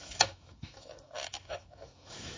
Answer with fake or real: fake